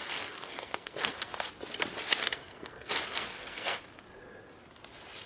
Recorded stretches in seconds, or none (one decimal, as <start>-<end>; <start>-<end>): 1.5-2.2; 3.8-5.3

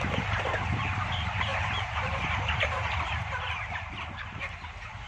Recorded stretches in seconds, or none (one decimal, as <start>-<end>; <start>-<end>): none

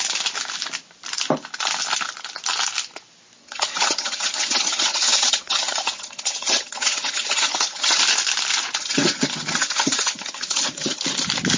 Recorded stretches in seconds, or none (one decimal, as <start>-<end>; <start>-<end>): 0.0-3.4; 8.0-8.8; 11.0-11.6

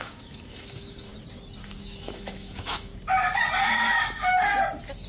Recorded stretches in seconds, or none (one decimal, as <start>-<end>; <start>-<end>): 1.1-1.8; 2.9-3.7; 4.5-5.1

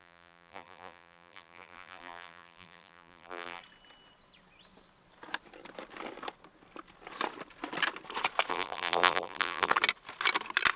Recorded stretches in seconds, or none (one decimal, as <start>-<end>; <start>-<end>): 3.6-8.5; 9.7-10.8